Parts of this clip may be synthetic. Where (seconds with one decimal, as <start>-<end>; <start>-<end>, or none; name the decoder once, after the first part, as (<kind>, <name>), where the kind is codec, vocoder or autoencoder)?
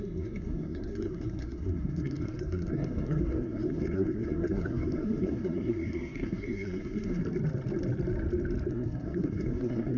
0.0-7.2 (codec, SNAC); 8.7-10.0